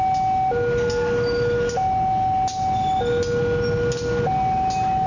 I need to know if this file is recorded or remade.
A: recorded